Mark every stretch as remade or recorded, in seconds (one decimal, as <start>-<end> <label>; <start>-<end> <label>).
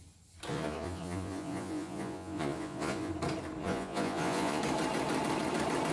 0.0-0.5 recorded; 0.5-3.1 remade; 3.1-3.6 recorded; 3.6-4.6 remade; 4.6-5.9 recorded